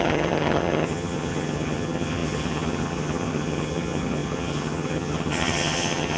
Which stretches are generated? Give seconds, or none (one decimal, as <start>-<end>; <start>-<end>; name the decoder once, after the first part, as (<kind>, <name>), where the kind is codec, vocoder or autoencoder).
0.0-6.2 (vocoder, HiFi-GAN)